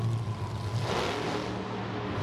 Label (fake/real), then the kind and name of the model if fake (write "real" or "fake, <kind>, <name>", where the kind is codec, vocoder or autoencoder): real